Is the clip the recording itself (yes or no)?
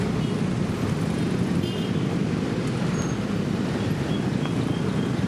yes